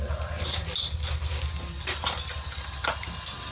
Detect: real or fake real